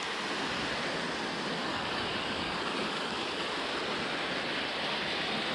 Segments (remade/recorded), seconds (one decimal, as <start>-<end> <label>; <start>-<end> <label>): 0.0-1.7 recorded; 1.7-3.4 remade; 3.4-5.5 recorded